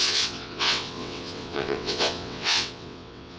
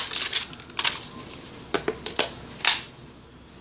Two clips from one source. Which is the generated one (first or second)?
first